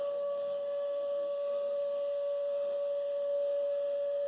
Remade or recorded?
remade